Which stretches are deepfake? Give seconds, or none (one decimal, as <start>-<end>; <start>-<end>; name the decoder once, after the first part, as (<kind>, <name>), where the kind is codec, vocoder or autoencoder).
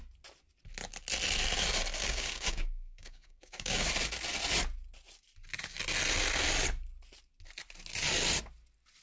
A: 2.0-3.9 (codec, DAC)